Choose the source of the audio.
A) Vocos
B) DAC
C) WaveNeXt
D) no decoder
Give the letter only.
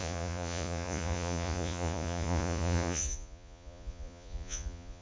A